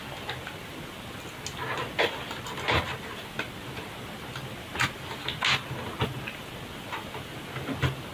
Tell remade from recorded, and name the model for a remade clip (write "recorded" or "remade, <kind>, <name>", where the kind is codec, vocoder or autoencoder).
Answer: recorded